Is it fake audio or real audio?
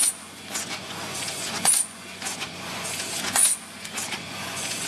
fake